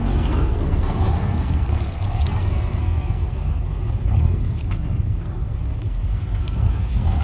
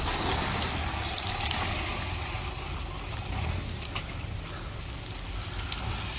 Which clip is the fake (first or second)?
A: first